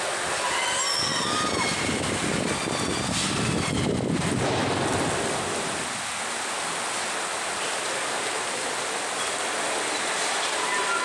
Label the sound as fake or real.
real